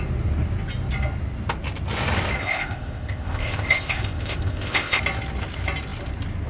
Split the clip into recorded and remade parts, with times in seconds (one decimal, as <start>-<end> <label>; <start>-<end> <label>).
0.0-2.4 recorded; 2.4-5.0 remade; 5.0-6.5 recorded